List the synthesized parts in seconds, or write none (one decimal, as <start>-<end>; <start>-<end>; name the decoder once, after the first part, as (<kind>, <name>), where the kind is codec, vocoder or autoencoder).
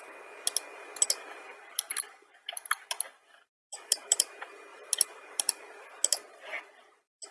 0.0-1.9 (vocoder, BigVGAN v2); 3.7-7.3